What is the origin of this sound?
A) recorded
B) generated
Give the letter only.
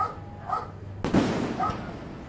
A